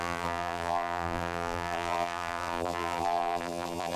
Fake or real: fake